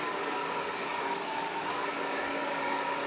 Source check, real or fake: fake